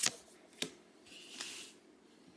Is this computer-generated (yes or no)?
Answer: no